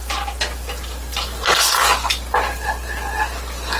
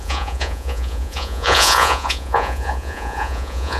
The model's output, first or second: second